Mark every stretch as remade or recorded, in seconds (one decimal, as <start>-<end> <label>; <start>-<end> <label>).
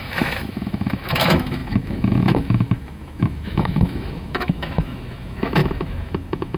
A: 0.0-6.6 remade